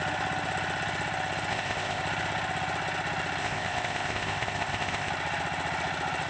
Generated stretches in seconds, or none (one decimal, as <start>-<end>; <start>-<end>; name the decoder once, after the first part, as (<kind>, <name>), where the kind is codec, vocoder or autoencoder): 1.5-2.0 (codec, ZipCodec); 3.4-5.1